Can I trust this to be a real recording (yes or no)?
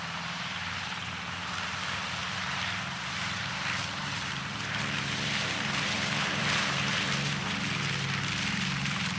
no